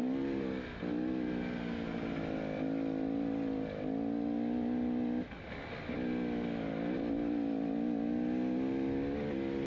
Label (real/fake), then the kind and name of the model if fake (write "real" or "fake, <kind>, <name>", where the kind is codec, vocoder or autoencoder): real